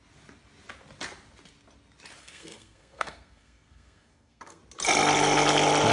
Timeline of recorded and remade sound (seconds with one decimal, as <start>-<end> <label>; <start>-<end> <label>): 0.0-2.2 recorded; 2.2-4.6 remade; 4.6-5.9 recorded